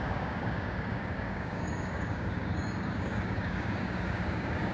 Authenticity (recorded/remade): remade